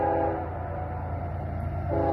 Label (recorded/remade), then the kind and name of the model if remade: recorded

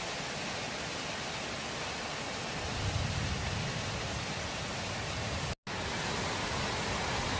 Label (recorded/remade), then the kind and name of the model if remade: recorded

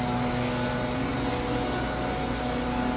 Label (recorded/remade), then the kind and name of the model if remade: recorded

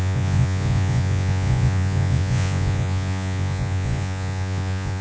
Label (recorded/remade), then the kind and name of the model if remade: remade, vocoder, Vocos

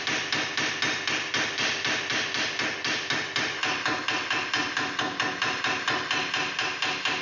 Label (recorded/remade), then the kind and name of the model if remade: recorded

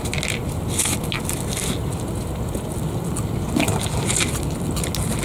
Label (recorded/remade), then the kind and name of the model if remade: recorded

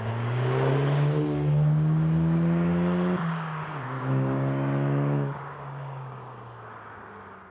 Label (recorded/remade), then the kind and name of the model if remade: remade, codec, DAC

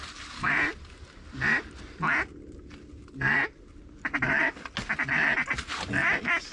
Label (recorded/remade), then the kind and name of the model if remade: recorded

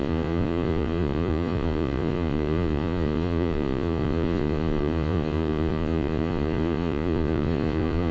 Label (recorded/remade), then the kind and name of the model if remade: remade, vocoder, Vocos